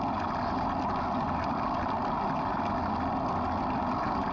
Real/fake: real